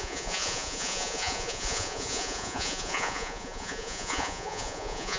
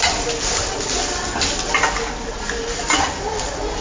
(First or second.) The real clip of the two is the second